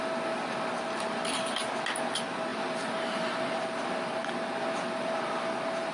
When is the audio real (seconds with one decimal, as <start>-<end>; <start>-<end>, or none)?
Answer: 0.0-2.5; 4.2-5.9